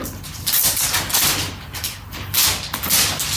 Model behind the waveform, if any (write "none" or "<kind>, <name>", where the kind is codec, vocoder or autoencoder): none